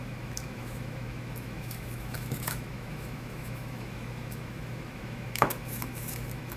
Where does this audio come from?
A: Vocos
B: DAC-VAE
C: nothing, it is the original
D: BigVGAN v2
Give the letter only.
B